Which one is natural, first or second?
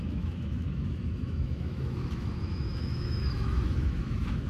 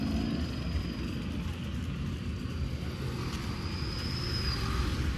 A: second